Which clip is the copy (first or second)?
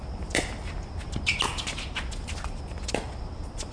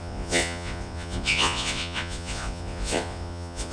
second